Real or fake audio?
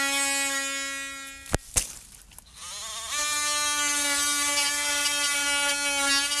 real